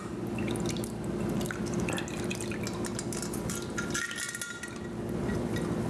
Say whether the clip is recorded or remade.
recorded